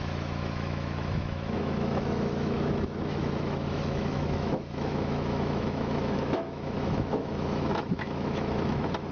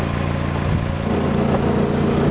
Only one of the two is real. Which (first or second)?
second